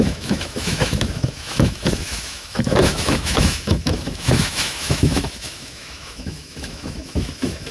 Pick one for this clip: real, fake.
fake